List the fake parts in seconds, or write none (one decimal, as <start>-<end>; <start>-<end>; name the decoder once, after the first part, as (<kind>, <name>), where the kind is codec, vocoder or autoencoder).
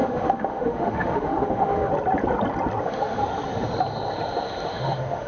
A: 0.0-1.9 (autoencoder, DAC-VAE); 2.8-3.2; 4.7-5.3